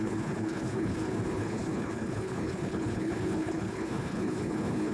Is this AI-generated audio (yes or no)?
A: yes